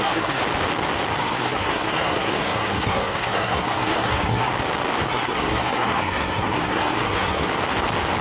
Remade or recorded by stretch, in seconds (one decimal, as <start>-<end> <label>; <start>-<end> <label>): 0.0-0.4 remade; 0.4-1.2 recorded; 1.2-4.5 remade; 4.5-5.1 recorded; 5.1-7.5 remade; 7.5-8.2 recorded